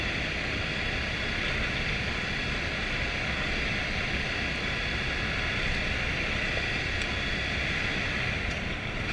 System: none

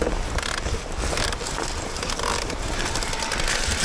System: none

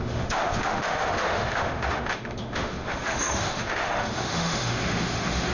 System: autoencoder, DAC-VAE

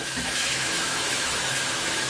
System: autoencoder, DAC-VAE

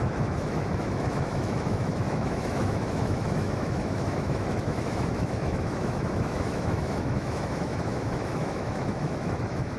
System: autoencoder, DAC-VAE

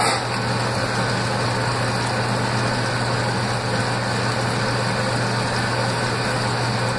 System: none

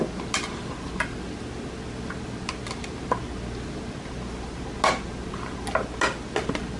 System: none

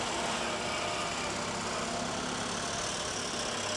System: none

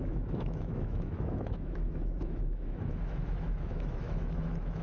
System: autoencoder, DAC-VAE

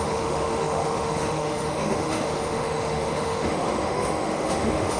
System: autoencoder, DAC-VAE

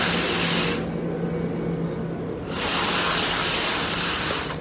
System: none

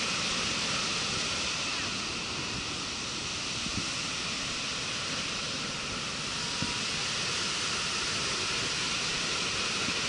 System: none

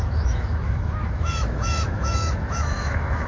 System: autoencoder, DAC-VAE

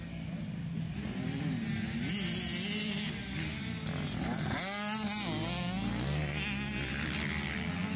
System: none